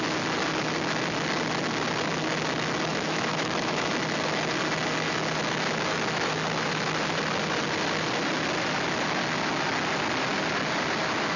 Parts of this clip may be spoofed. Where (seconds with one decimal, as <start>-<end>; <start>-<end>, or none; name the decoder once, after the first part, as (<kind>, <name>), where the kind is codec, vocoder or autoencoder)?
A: 2.9-3.9 (autoencoder, DAC-VAE)